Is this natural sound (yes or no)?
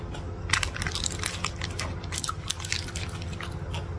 yes